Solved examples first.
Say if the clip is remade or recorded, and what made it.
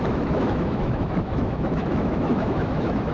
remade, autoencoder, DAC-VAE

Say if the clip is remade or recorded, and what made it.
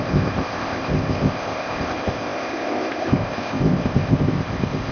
remade, codec, ZipCodec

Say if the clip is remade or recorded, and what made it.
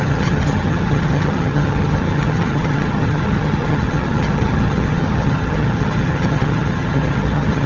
remade, vocoder, HiFi-GAN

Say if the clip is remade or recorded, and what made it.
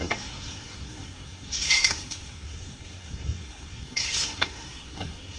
remade, codec, SNAC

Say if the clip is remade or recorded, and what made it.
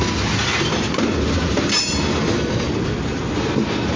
recorded